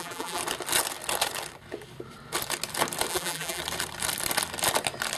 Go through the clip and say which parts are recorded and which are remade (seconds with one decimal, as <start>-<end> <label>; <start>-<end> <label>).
0.0-0.4 remade; 0.4-3.1 recorded; 3.1-3.6 remade; 3.6-5.2 recorded